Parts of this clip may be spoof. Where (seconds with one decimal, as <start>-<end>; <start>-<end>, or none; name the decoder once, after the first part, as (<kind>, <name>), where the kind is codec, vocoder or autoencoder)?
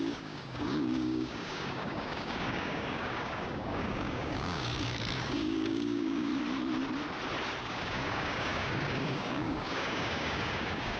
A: 0.0-6.3 (codec, DAC); 7.6-11.0